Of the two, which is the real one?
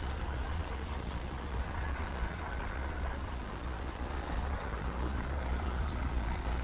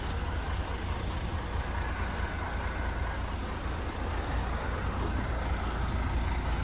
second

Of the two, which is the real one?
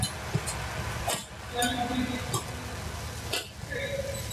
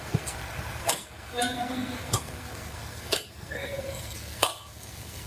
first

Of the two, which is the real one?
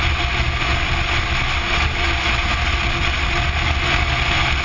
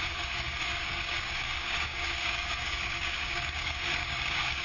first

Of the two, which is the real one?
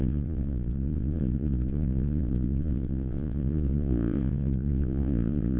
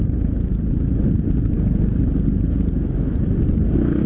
second